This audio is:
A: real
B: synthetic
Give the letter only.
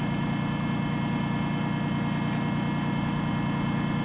A